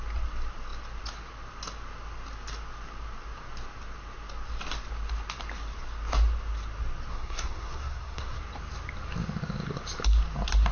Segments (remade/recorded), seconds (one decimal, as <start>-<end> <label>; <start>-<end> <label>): 0.0-7.1 recorded; 7.1-8.4 remade; 8.4-10.7 recorded